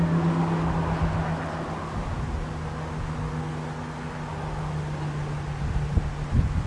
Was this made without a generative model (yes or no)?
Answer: yes